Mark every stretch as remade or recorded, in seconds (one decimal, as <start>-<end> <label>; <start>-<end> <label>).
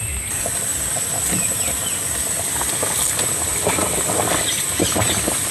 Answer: 0.0-5.5 recorded